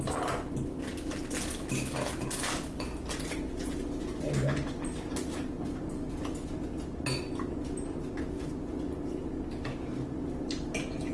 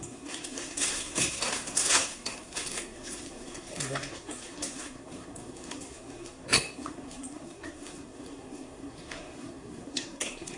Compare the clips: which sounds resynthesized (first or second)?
second